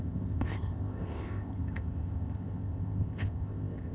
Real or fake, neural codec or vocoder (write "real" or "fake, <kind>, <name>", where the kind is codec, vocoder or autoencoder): fake, codec, ZipCodec